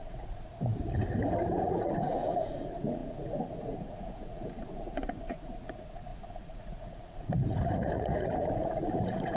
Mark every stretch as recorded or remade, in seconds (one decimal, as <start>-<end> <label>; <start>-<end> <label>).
0.0-0.5 remade; 0.5-1.5 recorded; 1.5-9.4 remade